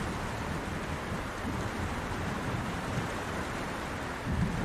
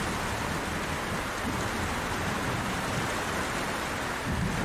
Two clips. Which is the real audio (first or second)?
second